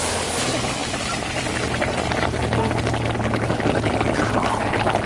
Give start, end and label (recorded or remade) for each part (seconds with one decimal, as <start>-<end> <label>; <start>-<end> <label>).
0.0-5.1 recorded